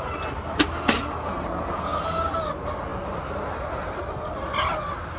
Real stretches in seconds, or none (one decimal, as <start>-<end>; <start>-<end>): 0.0-2.9; 3.9-5.2